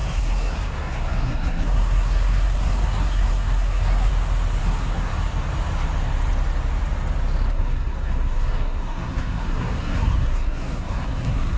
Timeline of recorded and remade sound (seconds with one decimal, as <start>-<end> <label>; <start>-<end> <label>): 0.0-4.1 remade; 4.1-4.6 recorded; 4.6-5.1 remade; 5.1-7.5 recorded; 7.5-11.6 remade